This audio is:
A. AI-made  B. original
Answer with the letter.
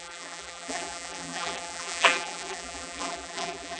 A